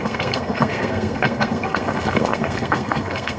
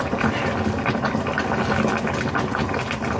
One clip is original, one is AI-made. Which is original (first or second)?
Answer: second